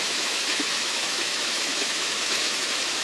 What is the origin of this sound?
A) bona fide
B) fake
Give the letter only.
B